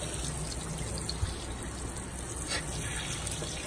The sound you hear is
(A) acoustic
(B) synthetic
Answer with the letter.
A